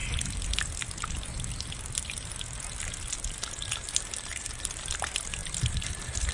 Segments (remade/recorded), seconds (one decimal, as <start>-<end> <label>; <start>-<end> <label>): 0.0-6.3 recorded